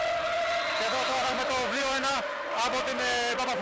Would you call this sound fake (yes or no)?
no